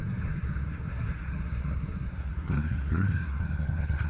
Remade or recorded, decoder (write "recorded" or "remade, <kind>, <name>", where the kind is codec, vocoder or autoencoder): remade, codec, SNAC